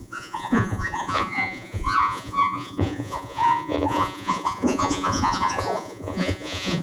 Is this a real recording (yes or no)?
no